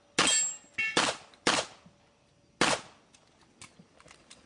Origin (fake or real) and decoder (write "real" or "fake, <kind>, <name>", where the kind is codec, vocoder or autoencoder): real